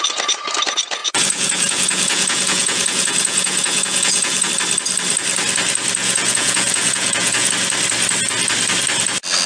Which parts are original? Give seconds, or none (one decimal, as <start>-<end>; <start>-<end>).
0.0-1.0; 4.5-6.0; 7.5-9.5